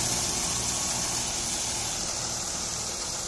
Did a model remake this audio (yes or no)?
no